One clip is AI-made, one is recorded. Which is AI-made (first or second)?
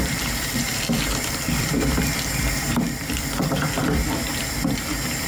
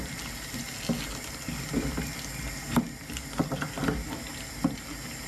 first